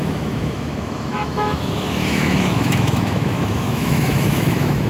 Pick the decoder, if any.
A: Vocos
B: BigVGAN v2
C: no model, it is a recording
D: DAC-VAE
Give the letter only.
D